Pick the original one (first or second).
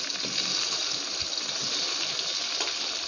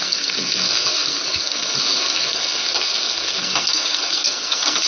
first